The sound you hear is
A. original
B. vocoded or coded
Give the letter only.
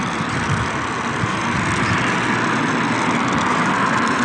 A